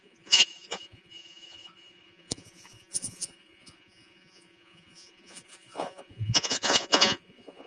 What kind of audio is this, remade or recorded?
remade